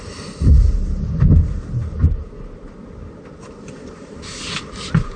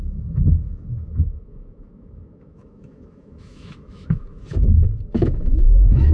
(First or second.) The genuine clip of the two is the first